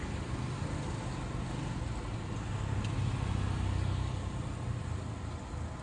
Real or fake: real